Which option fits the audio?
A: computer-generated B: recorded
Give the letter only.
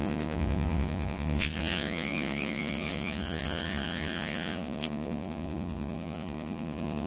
A